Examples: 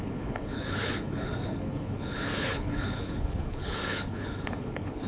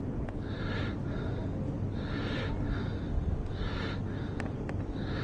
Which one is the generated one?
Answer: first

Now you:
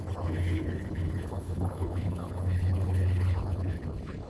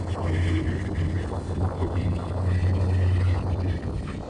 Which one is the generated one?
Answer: first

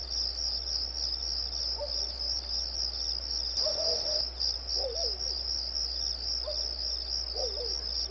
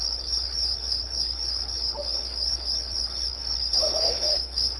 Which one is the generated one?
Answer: second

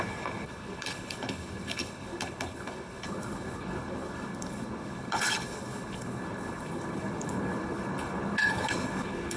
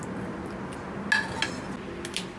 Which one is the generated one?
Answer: first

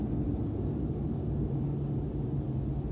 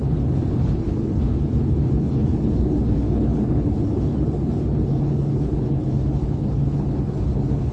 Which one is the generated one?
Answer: second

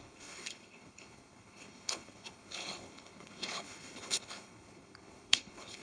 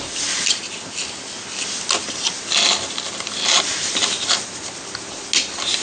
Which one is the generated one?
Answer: first